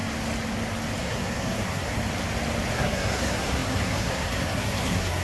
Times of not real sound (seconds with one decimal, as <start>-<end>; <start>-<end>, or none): 1.0-2.0; 2.7-5.2